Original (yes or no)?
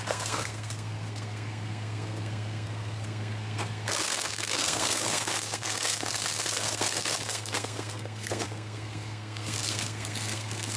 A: no